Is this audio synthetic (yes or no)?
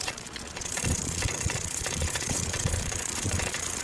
yes